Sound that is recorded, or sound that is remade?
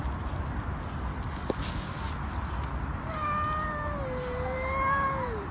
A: recorded